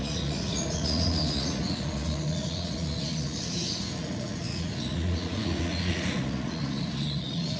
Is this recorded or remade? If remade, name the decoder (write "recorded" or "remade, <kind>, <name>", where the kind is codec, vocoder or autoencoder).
remade, vocoder, Vocos